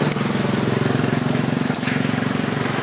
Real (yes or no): yes